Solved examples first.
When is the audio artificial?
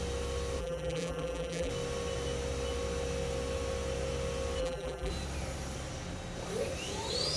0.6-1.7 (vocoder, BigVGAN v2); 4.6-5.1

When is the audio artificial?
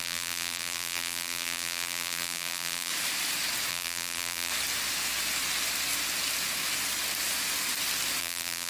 0.0-2.9 (vocoder, BigVGAN v2); 3.7-4.5; 8.2-8.7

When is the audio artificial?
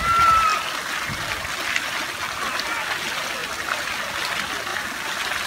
4.7-5.5 (vocoder, BigVGAN v2)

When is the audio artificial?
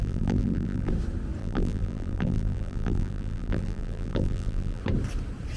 0.0-0.9 (vocoder, BigVGAN v2); 1.4-4.8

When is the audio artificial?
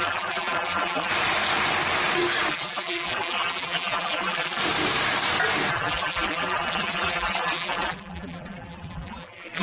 0.0-1.1 (vocoder, BigVGAN v2); 2.5-4.6; 5.7-9.6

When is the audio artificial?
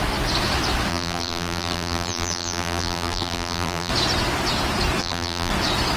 0.9-3.9 (vocoder, BigVGAN v2); 5.0-5.5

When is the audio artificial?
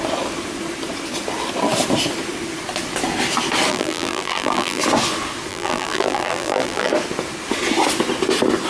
3.7-4.8 (vocoder, BigVGAN v2); 5.5-6.9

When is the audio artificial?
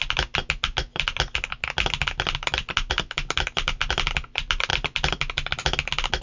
none